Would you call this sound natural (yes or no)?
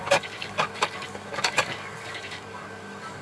no